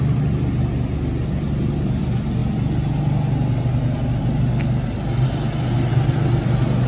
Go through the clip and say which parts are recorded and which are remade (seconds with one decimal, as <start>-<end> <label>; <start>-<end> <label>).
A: 0.0-6.9 recorded